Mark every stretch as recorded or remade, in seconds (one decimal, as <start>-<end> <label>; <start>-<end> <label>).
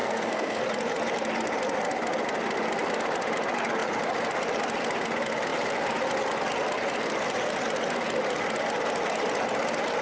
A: 0.0-0.6 remade; 0.6-10.0 recorded